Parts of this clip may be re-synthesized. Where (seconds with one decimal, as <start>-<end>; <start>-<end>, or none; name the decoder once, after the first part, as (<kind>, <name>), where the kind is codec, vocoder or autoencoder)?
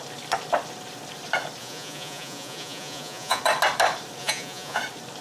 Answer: 1.6-3.4 (vocoder, Vocos); 4.2-4.8